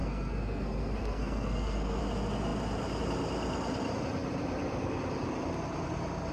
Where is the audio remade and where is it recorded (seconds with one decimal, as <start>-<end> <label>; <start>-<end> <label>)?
0.0-2.0 remade; 2.0-6.3 recorded